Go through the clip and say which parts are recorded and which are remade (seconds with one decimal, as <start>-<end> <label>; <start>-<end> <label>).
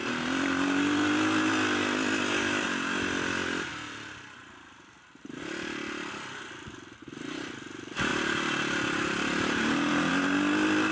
0.0-8.1 recorded; 8.1-10.1 remade; 10.1-10.9 recorded